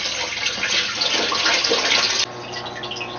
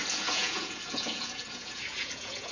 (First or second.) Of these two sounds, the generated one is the second